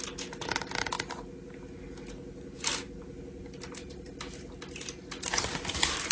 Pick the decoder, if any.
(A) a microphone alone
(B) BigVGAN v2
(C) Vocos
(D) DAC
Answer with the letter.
A